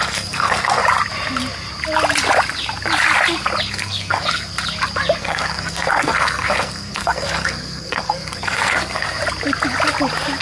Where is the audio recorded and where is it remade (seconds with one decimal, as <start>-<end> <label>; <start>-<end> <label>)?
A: 0.0-0.8 remade; 0.8-3.7 recorded; 3.7-4.5 remade; 4.5-5.2 recorded; 5.2-9.2 remade; 9.2-10.4 recorded